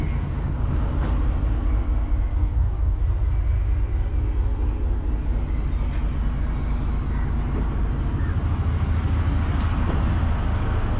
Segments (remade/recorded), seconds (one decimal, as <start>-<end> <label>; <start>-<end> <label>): 0.0-2.4 recorded; 2.4-3.0 remade; 3.0-11.0 recorded